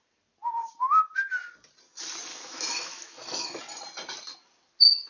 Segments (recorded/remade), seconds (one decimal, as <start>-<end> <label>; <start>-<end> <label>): 0.0-2.3 recorded; 2.3-3.6 remade; 3.6-5.1 recorded